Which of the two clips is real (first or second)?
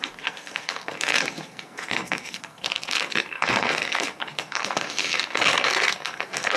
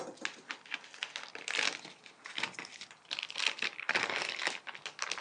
second